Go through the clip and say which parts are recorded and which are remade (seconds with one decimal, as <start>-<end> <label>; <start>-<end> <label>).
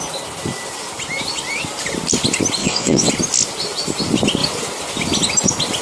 0.0-2.6 recorded; 2.6-3.1 remade; 3.1-5.8 recorded